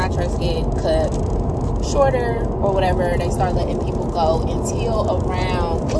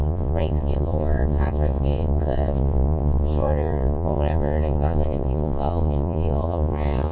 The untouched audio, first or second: first